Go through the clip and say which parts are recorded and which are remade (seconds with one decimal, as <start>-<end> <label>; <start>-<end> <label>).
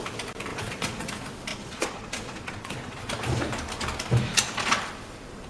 0.0-0.5 recorded; 0.5-1.1 remade; 1.1-1.5 recorded; 1.5-3.0 remade; 3.0-5.5 recorded